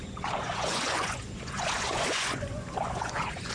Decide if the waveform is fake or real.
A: fake